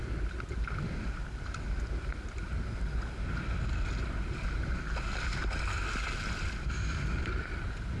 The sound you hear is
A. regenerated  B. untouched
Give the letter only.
B